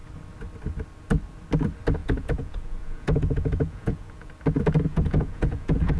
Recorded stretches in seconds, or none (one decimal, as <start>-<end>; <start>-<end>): 0.0-2.0; 4.3-4.9